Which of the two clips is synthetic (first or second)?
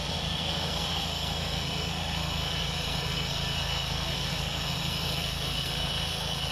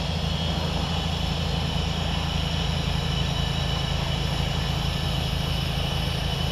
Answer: first